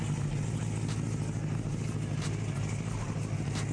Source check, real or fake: real